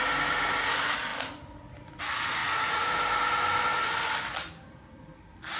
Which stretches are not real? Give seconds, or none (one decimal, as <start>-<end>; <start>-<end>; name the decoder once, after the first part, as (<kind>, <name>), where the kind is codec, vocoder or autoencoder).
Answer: 2.4-2.9 (vocoder, Vocos)